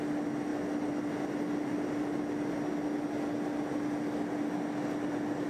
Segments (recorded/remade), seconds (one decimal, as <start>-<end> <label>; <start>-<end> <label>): 0.0-5.5 recorded